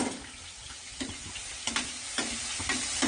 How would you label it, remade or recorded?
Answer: recorded